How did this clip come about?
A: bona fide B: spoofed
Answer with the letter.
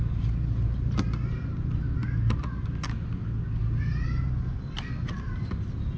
A